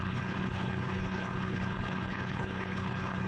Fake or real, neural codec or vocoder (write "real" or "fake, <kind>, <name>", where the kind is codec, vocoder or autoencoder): fake, codec, HILCodec